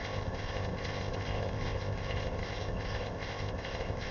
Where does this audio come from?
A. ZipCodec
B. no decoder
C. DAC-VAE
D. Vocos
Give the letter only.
A